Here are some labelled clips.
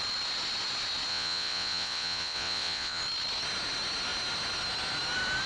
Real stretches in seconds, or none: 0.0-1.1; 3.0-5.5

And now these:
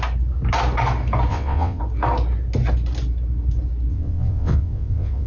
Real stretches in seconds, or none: 0.0-1.3; 1.8-3.9

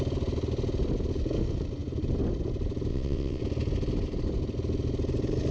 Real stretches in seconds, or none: 0.0-2.9; 3.4-5.5

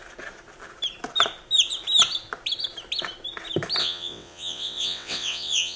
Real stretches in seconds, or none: 0.0-3.8

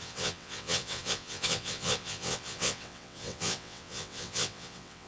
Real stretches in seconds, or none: none

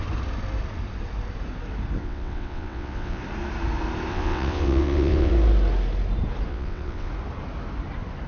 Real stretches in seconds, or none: 0.0-2.0; 3.2-4.1; 5.3-6.5; 7.1-8.3